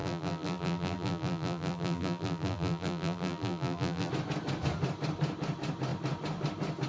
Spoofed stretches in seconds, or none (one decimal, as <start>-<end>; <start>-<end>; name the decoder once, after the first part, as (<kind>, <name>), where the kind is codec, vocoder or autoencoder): 0.0-4.1 (vocoder, BigVGAN v2)